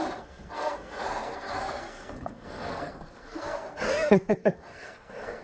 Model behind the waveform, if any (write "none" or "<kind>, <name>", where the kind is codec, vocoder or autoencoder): codec, SNAC